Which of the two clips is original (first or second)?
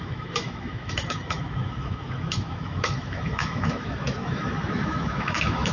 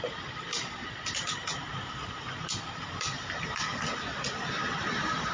second